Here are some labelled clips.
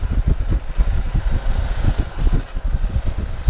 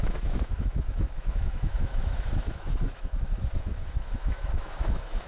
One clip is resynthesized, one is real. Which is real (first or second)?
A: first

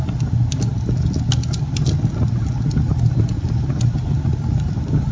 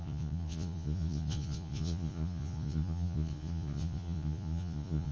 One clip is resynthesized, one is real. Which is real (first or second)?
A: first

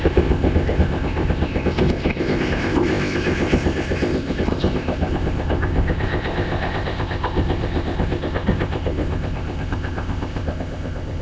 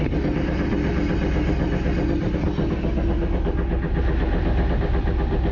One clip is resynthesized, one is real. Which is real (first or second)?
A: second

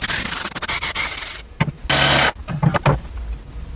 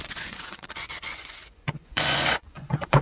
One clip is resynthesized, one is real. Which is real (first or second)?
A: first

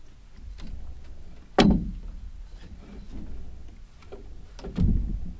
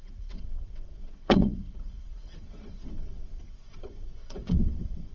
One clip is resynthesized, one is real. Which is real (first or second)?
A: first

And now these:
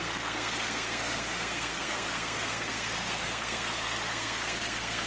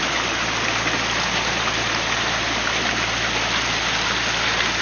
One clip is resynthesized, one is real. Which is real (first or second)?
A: second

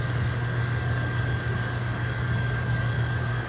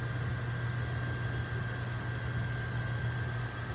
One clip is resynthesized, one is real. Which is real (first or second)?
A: second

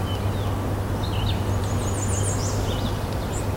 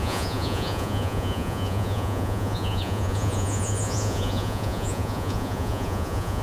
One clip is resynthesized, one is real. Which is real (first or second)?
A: first